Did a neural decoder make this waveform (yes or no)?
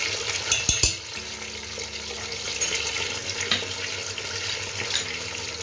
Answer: no